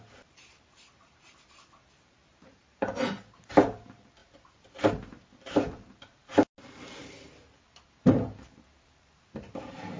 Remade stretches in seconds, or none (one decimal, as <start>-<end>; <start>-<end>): 0.0-4.2; 4.9-6.2; 7.0-10.0